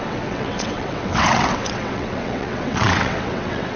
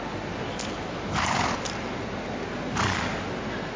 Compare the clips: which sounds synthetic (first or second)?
first